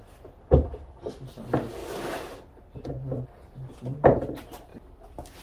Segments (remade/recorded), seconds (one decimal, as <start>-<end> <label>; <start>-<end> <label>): 0.0-5.4 recorded